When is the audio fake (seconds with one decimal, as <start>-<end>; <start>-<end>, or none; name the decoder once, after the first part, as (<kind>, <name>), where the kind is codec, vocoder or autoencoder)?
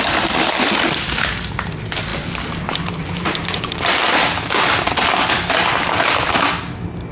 none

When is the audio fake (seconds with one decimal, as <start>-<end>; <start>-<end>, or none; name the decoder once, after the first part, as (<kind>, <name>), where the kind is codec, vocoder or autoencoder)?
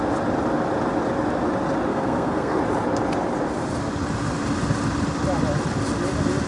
1.9-2.6 (codec, SNAC)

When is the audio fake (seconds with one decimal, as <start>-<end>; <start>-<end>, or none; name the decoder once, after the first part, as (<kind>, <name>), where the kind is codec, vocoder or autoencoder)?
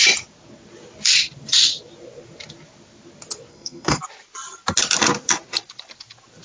3.5-4.0 (codec, SNAC)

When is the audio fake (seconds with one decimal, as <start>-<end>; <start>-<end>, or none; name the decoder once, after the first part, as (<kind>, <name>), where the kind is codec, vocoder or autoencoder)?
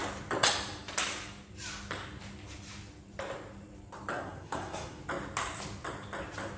4.1-5.0 (codec, SNAC)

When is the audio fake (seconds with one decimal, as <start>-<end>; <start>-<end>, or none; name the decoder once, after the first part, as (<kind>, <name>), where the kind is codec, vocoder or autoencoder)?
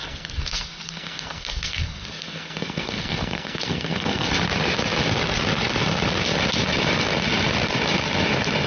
0.0-4.3 (codec, SNAC)